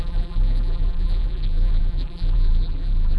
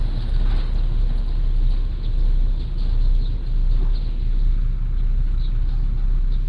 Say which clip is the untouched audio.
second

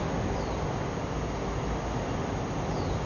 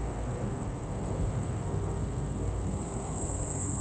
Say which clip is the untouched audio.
first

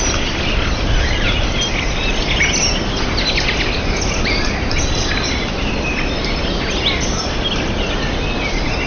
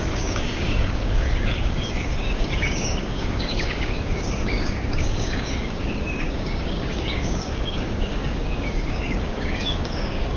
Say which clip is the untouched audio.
first